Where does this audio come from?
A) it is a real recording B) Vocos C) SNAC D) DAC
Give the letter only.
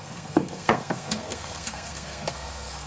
C